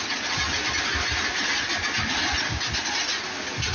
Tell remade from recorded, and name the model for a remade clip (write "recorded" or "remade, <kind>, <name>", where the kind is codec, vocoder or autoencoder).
recorded